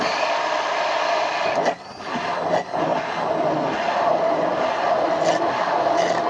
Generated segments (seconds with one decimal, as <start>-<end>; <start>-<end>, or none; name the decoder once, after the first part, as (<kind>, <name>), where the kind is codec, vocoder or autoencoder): none